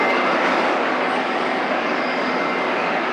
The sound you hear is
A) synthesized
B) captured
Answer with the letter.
A